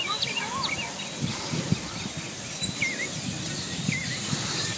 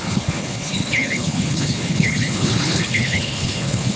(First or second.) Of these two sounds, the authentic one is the first